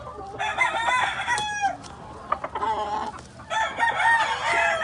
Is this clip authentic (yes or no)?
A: yes